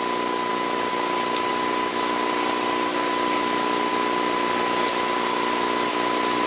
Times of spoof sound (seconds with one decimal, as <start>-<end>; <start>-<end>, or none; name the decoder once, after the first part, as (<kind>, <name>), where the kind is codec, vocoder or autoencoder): none